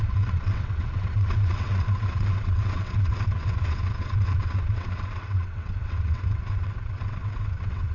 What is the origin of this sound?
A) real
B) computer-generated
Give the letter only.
B